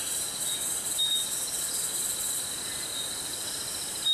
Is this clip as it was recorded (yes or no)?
yes